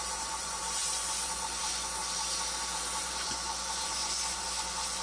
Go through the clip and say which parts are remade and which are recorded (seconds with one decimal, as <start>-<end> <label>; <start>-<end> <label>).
0.0-2.0 remade; 2.0-3.0 recorded; 3.0-5.0 remade